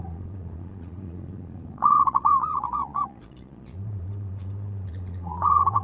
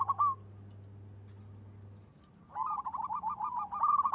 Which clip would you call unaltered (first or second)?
second